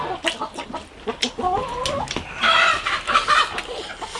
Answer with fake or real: real